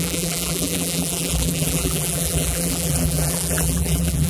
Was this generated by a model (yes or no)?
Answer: yes